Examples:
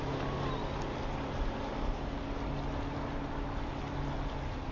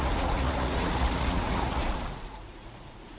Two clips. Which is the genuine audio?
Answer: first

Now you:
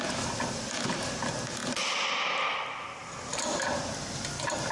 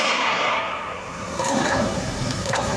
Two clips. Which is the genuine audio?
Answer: first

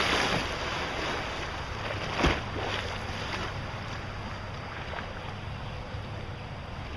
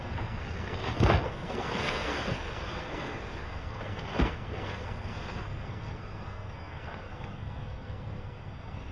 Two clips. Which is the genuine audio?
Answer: first